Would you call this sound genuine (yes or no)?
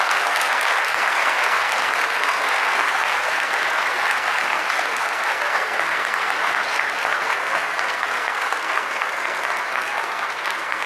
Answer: no